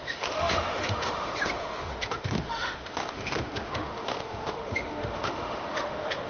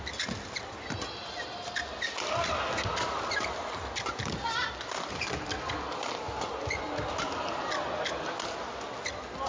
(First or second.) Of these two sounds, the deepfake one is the first